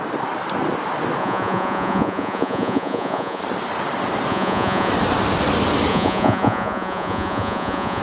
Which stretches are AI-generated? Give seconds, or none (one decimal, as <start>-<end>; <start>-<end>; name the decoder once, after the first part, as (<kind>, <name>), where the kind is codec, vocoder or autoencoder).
1.2-3.4 (vocoder, Vocos); 4.3-4.9; 5.9-8.0